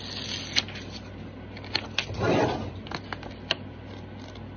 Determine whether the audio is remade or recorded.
recorded